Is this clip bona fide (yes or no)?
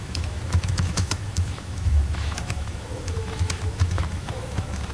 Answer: no